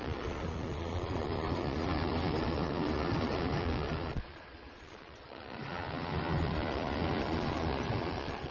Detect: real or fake fake